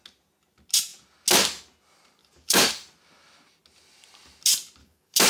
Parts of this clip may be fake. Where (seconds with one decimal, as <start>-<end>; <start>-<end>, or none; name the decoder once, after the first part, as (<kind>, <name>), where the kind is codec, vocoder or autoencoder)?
2.2-2.7 (codec, DAC); 4.8-5.3